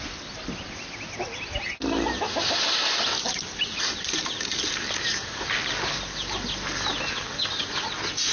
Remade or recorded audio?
recorded